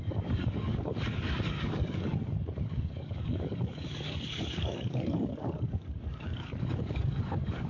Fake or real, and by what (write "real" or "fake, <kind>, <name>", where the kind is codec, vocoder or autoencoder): fake, codec, DAC